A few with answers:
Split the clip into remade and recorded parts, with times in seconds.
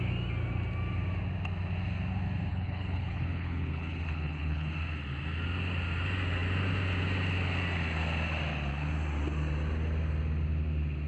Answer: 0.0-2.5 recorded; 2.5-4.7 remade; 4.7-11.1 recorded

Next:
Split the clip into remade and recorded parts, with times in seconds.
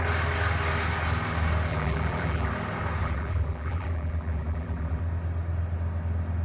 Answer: 0.0-1.7 recorded; 1.7-2.5 remade; 2.5-3.0 recorded; 3.0-5.0 remade; 5.0-6.4 recorded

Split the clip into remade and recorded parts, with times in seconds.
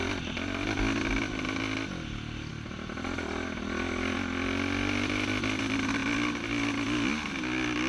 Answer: 0.0-7.9 recorded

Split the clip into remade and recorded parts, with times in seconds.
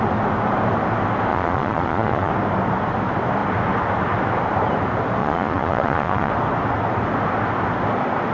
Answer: 0.0-1.3 recorded; 1.3-2.3 remade; 2.3-5.2 recorded; 5.2-6.3 remade; 6.3-8.3 recorded